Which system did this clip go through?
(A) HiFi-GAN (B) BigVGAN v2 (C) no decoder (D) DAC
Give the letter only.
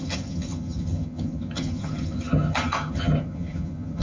A